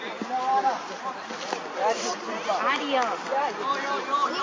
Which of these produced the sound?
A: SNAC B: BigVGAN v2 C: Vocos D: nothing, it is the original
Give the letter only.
D